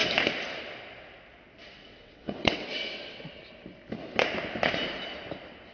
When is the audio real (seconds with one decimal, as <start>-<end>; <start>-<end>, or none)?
0.0-1.8; 3.2-5.7

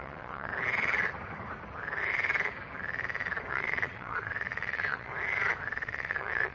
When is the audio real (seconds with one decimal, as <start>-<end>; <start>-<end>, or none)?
0.5-3.5; 5.1-5.6

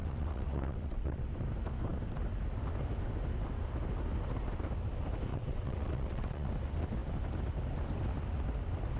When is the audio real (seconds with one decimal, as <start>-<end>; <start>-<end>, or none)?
1.3-5.3; 6.5-9.0

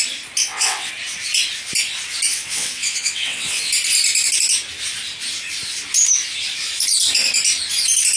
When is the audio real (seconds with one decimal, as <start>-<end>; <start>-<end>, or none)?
0.0-0.4; 0.9-2.3; 3.7-8.2

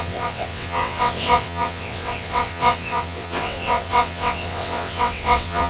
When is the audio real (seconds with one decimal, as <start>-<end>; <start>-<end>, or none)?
none

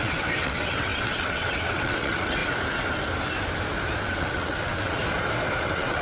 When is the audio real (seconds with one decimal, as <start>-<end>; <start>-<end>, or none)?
2.4-4.0; 5.0-5.6

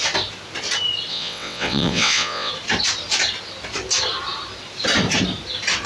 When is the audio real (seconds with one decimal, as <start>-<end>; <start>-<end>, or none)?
0.0-1.1; 2.5-5.9

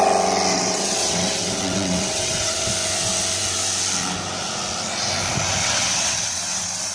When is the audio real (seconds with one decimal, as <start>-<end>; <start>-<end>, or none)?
0.0-0.5; 2.7-5.6